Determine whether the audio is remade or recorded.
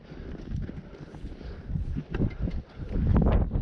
recorded